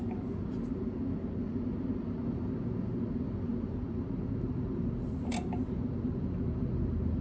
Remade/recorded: recorded